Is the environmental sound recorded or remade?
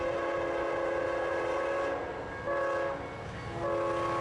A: recorded